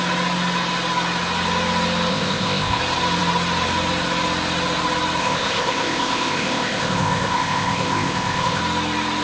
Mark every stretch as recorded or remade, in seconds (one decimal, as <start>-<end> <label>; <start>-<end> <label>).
0.0-2.1 recorded; 2.1-2.8 remade; 2.8-5.2 recorded; 5.2-8.6 remade; 8.6-9.2 recorded